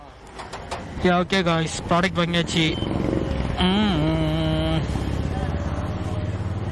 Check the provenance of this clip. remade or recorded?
recorded